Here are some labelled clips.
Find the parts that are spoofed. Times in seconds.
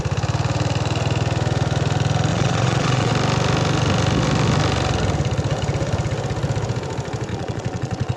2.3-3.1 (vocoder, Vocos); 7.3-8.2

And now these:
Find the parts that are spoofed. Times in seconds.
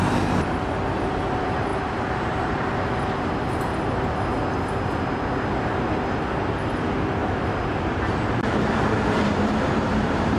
1.7-3.7 (vocoder, BigVGAN v2); 7.2-10.4